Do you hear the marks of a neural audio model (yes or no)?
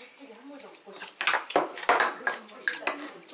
no